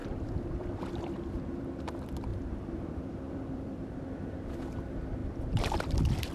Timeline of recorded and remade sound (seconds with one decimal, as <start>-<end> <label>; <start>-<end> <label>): 0.0-0.8 remade; 0.8-2.3 recorded; 2.3-4.3 remade; 4.3-5.2 recorded; 5.2-5.8 remade; 5.8-6.3 recorded